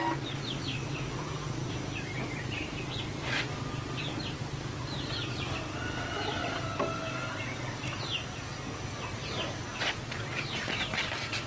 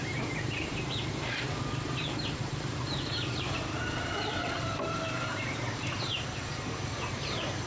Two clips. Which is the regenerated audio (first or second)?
second